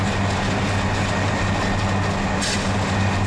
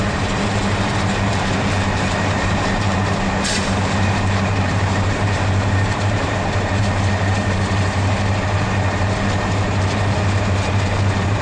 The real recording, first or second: first